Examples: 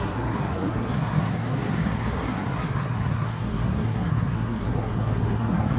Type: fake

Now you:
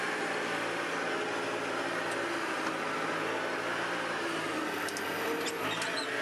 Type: real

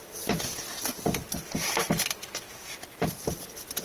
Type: real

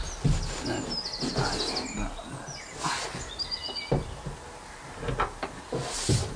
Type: real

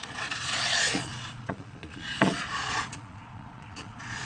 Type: fake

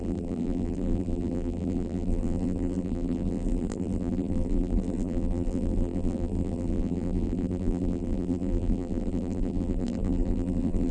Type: fake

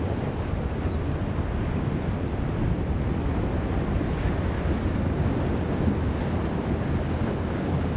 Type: real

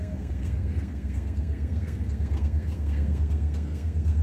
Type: fake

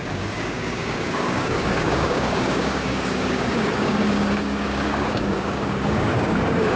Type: fake